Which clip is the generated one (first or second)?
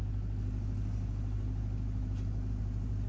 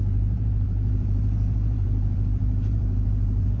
second